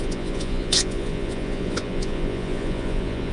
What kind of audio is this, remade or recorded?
remade